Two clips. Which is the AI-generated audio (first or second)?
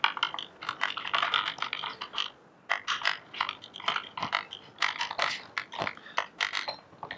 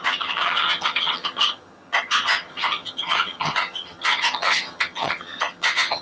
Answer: second